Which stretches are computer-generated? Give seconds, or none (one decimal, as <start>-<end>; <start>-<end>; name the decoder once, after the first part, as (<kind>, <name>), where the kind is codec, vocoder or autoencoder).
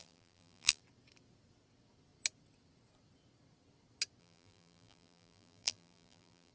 0.0-0.8 (vocoder, BigVGAN v2); 4.2-6.5